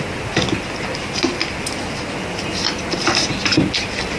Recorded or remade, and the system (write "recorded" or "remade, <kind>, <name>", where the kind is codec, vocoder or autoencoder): recorded